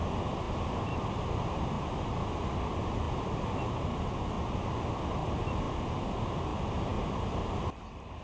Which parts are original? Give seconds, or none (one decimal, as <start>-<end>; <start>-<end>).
0.0-8.2